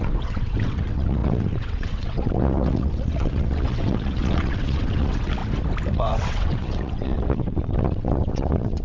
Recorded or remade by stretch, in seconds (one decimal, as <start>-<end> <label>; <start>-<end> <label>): 0.0-5.4 remade; 5.4-5.9 recorded; 5.9-8.8 remade